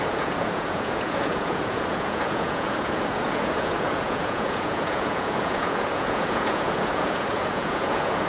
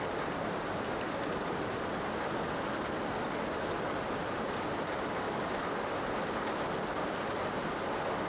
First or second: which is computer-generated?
first